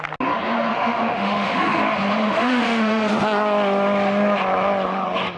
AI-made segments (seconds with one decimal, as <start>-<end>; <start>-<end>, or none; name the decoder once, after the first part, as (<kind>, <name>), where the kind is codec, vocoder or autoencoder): 0.7-1.8 (autoencoder, DAC-VAE); 2.2-3.1